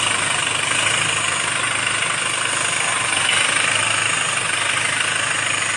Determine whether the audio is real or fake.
real